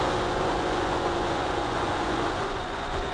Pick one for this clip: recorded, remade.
remade